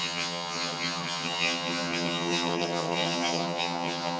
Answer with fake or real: fake